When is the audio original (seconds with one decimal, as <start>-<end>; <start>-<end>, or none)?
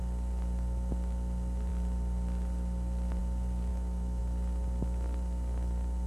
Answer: 0.0-3.7; 4.2-6.1